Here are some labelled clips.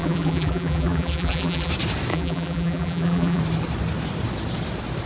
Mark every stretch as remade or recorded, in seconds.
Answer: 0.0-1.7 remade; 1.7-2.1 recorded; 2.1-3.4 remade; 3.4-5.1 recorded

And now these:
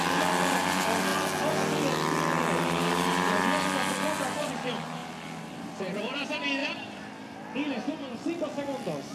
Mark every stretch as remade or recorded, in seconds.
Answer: 0.0-5.0 recorded; 5.0-6.0 remade; 6.0-6.6 recorded; 6.6-8.4 remade; 8.4-9.1 recorded

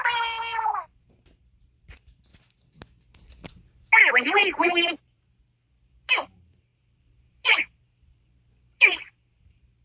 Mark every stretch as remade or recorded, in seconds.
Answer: 0.0-2.3 remade; 2.3-4.9 recorded; 4.9-9.8 remade